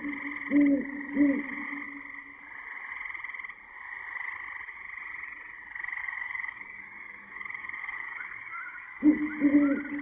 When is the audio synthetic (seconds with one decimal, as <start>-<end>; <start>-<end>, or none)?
6.0-9.3